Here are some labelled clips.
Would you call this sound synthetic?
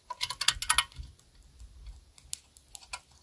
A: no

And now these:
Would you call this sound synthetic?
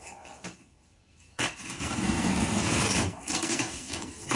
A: yes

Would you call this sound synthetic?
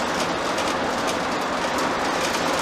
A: no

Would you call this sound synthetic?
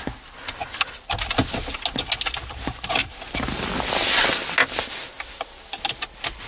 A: no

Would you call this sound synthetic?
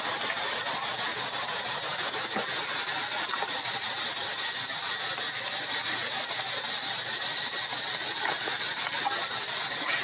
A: no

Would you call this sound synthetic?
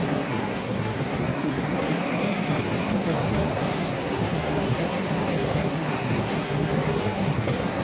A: yes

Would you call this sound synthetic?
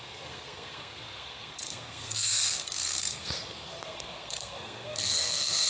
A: yes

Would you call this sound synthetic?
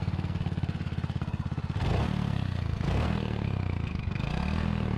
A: yes